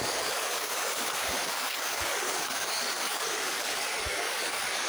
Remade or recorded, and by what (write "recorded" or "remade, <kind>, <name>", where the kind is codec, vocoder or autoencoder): remade, codec, DAC